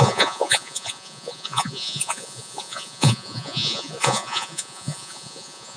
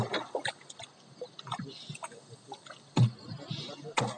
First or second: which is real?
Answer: second